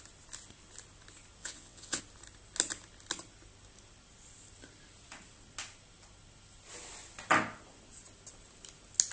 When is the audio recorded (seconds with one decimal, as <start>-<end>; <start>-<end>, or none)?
0.0-1.4; 2.0-9.1